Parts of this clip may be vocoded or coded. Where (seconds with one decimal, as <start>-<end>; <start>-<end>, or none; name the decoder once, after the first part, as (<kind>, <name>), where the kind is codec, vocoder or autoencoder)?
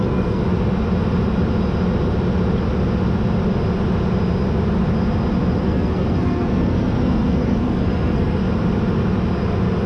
0.0-0.4 (codec, SNAC); 5.6-8.4